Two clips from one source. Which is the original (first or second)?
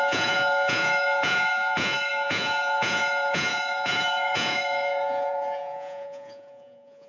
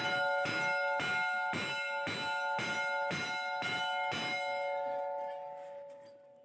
second